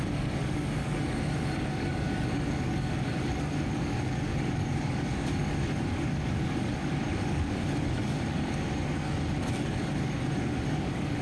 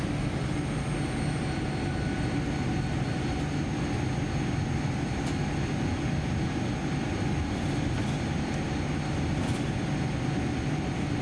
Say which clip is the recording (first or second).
second